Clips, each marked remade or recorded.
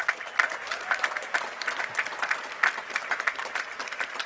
recorded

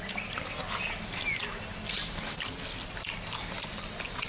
recorded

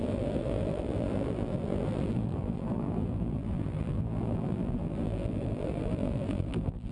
remade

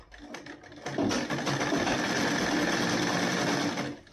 recorded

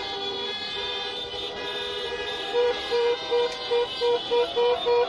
remade